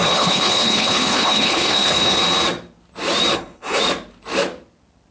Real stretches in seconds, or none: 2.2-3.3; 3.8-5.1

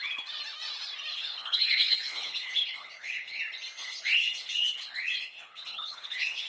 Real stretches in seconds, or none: 0.0-1.1; 3.4-3.8

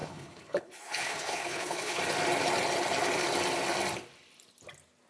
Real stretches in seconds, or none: 2.0-5.1

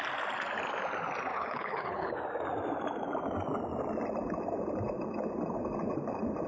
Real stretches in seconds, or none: 0.0-1.3; 2.1-6.5

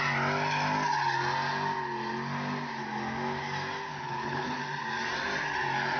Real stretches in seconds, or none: 0.0-3.9; 4.6-6.0

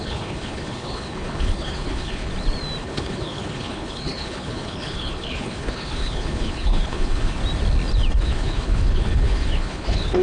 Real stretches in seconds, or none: 2.3-2.8; 7.4-8.2

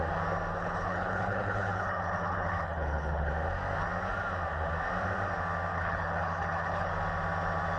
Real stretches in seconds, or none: 0.0-0.5; 3.3-5.7; 6.9-7.8

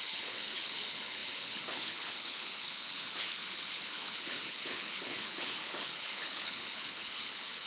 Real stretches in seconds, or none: none